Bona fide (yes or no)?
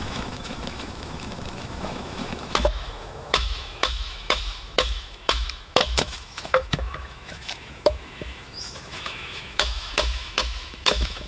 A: no